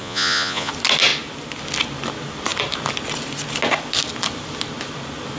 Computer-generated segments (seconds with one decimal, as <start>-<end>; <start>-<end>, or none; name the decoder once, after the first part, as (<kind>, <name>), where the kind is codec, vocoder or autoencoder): 0.0-0.7 (vocoder, Vocos)